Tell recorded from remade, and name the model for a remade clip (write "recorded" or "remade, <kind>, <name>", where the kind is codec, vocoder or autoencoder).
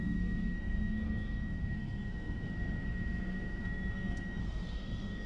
remade, codec, SNAC